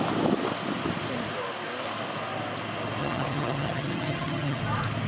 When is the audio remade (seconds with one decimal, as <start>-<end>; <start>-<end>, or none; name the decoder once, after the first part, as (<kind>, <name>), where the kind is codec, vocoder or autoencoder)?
3.0-4.6 (vocoder, HiFi-GAN)